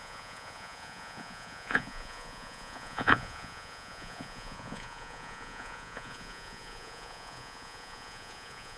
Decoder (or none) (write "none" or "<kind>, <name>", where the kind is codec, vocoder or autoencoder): vocoder, Vocos